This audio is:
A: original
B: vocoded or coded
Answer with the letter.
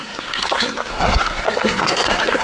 B